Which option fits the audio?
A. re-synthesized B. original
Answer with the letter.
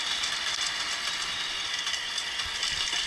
B